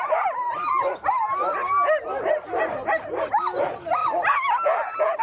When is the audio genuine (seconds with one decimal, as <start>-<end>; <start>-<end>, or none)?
0.0-5.2